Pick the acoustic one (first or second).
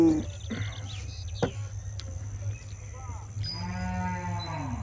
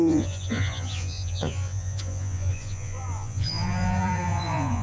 first